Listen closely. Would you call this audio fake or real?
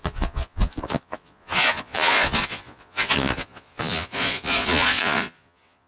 fake